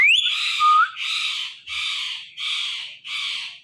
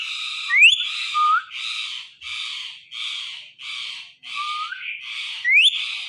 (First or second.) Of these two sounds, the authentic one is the second